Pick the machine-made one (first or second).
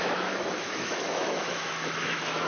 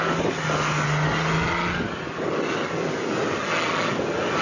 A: first